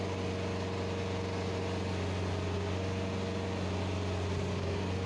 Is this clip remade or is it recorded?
recorded